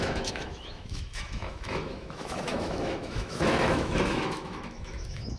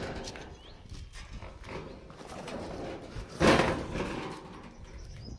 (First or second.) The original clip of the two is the second